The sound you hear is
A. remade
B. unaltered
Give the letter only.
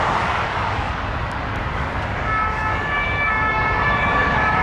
A